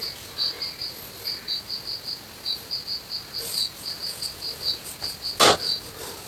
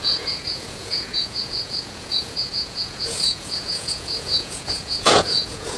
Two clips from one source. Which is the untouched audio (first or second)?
first